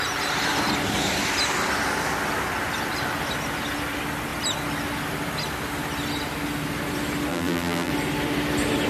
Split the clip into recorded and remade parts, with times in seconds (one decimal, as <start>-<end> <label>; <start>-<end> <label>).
0.0-7.3 recorded; 7.3-7.9 remade; 7.9-8.9 recorded